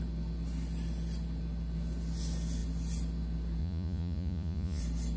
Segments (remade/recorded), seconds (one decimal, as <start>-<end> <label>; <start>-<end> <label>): 0.0-3.6 recorded; 3.6-4.8 remade; 4.8-5.2 recorded

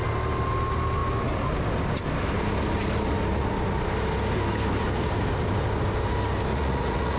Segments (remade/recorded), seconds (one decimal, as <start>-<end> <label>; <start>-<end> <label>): 0.0-6.5 recorded; 6.5-7.2 remade